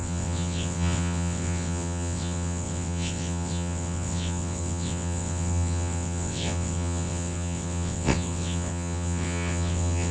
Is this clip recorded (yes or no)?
no